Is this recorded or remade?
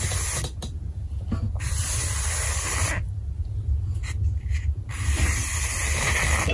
recorded